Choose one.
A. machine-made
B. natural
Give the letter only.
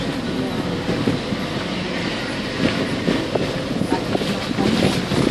B